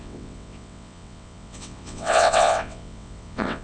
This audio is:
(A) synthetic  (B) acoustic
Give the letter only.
A